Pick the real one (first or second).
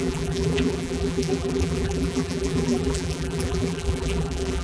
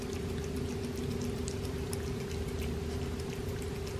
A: second